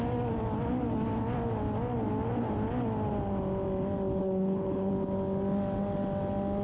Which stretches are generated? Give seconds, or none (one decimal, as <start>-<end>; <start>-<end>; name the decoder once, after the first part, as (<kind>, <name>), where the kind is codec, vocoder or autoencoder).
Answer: 4.2-4.9 (codec, HILCodec)